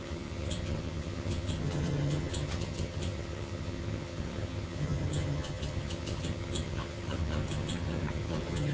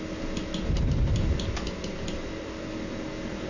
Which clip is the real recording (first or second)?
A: second